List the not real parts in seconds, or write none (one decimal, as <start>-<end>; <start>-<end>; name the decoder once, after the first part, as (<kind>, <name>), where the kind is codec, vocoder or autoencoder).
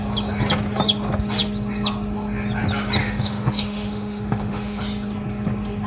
3.0-4.8 (autoencoder, DAC-VAE)